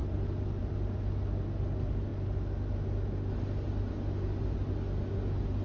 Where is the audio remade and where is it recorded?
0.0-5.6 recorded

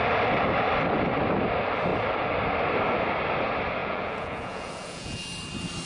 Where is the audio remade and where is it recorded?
0.0-3.8 recorded; 3.8-5.2 remade; 5.2-5.9 recorded

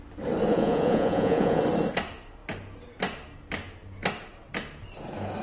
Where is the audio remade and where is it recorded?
0.0-0.5 recorded; 0.5-1.6 remade; 1.6-5.4 recorded

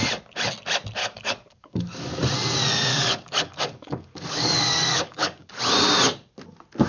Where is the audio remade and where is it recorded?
0.0-1.0 recorded; 1.0-2.1 remade; 2.1-2.9 recorded; 2.9-5.6 remade; 5.6-6.9 recorded

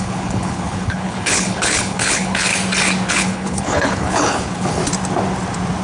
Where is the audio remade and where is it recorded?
0.0-2.5 remade; 2.5-3.1 recorded; 3.1-4.8 remade; 4.8-5.8 recorded